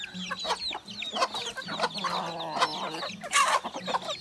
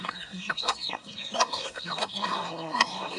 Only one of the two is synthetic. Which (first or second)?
second